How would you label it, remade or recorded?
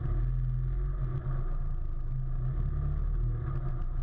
recorded